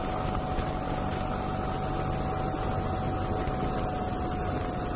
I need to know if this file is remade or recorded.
recorded